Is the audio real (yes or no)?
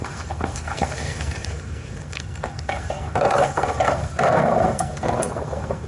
no